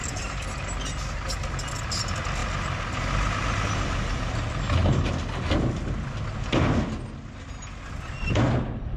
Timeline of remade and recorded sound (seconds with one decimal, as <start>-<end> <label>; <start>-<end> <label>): 0.0-0.6 remade; 0.6-9.0 recorded